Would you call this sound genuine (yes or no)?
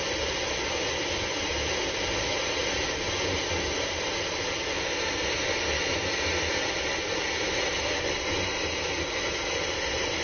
yes